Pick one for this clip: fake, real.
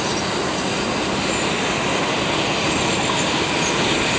real